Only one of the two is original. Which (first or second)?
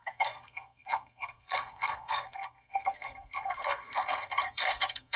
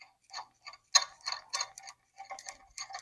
second